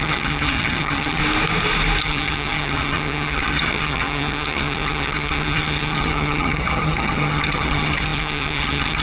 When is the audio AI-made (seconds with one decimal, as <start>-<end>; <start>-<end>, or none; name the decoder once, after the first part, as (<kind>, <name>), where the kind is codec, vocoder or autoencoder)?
0.0-1.2 (vocoder, HiFi-GAN); 2.0-9.0